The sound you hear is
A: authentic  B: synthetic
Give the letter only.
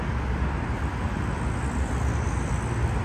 A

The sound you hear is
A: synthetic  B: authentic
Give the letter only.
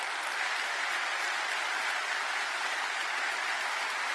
B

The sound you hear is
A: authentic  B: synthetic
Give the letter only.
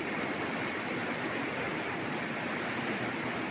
B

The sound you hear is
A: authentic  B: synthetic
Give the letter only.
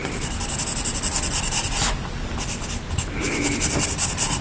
A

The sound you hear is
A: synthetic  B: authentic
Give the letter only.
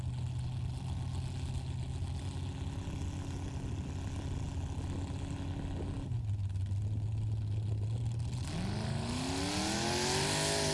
B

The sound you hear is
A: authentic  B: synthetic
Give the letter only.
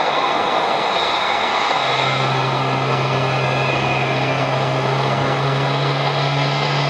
B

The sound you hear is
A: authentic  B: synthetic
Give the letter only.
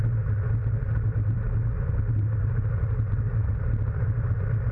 A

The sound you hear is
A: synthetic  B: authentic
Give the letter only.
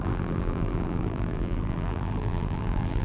A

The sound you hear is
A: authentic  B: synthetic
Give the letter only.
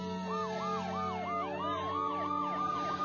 A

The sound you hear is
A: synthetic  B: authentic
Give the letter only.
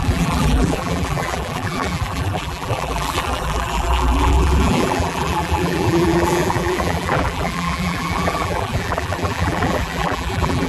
A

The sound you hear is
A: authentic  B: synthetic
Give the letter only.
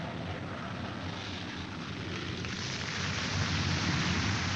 B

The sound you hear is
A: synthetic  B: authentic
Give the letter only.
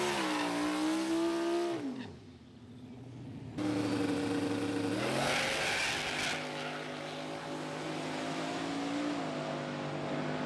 B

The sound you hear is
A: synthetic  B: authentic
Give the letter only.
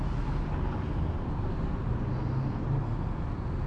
B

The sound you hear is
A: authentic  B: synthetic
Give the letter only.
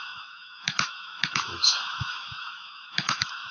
B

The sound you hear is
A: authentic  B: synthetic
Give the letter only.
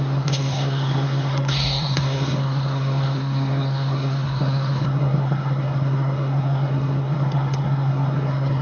B